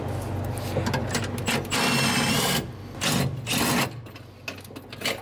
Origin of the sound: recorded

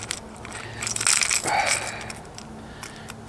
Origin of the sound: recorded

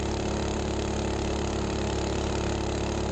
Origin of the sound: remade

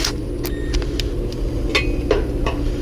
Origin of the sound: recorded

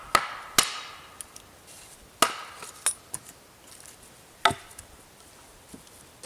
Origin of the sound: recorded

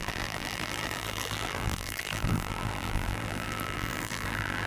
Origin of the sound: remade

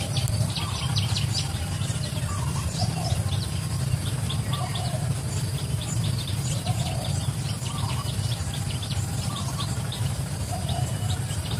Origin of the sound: remade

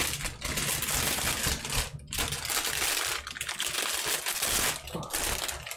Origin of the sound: recorded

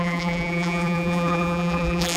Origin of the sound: remade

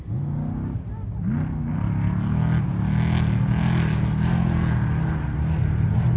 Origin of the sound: recorded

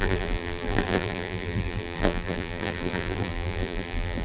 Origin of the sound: remade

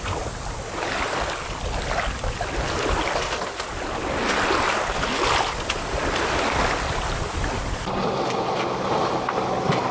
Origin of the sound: recorded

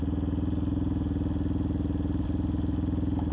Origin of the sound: recorded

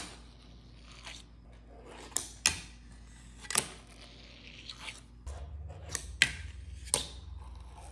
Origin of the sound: recorded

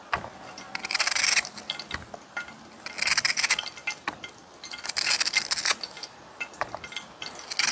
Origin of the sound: recorded